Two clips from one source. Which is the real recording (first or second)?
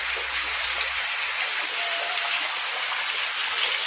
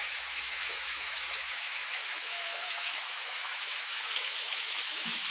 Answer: first